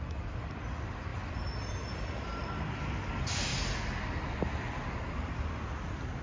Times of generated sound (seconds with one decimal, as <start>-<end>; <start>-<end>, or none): 1.1-2.5